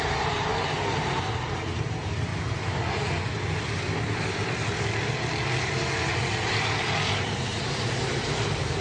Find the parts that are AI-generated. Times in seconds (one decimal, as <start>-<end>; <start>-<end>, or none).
0.0-0.5; 1.5-2.3; 7.2-8.8